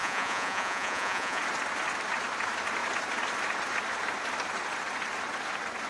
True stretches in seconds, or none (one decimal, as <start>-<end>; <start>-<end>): 1.4-5.9